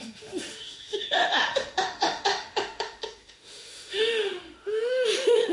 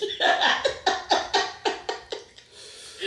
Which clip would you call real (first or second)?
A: second